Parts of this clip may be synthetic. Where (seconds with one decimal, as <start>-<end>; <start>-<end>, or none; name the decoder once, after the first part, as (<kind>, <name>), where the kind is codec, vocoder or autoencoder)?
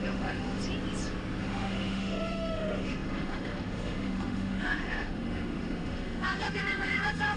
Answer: 0.0-0.6 (autoencoder, DAC-VAE); 1.4-7.4